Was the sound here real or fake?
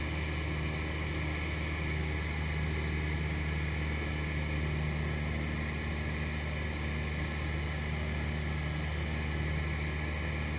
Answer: real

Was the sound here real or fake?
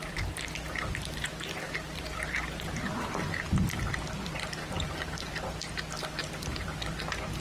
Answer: real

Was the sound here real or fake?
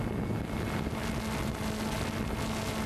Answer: real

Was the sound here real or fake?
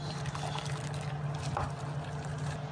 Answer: real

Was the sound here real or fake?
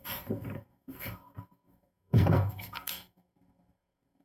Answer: fake